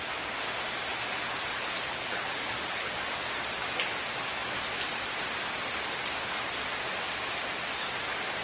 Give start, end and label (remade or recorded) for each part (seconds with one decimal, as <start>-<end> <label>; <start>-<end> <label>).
0.0-1.5 recorded; 1.5-2.9 remade; 2.9-8.4 recorded